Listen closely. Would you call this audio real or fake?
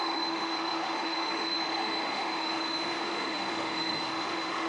fake